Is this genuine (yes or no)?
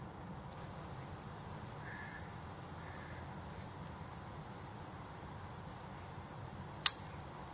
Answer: yes